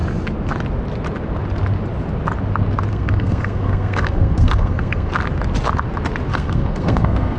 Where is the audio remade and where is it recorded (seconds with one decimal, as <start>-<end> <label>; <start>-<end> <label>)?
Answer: 0.0-2.9 recorded; 2.9-5.1 remade; 5.1-6.3 recorded; 6.3-7.4 remade